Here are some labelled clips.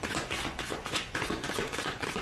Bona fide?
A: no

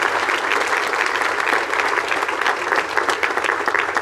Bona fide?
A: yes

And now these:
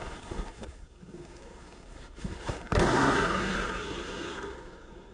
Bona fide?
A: no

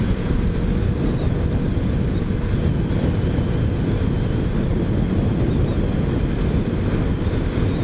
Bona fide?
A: yes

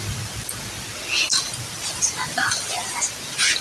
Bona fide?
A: yes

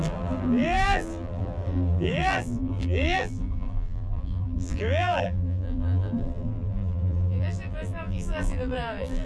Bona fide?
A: no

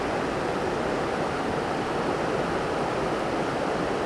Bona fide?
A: yes